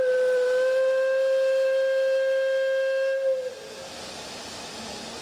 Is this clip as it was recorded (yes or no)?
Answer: yes